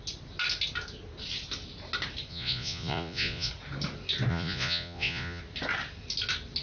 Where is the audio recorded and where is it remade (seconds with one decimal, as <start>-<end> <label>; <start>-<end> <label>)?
0.0-2.3 recorded; 2.3-3.5 remade; 3.5-4.3 recorded; 4.3-5.4 remade; 5.4-6.6 recorded